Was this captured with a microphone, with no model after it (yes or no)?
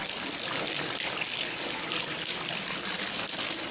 yes